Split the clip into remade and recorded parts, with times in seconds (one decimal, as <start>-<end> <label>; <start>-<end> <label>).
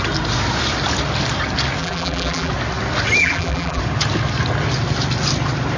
0.0-1.8 recorded; 1.8-2.5 remade; 2.5-3.2 recorded; 3.2-3.8 remade; 3.8-5.8 recorded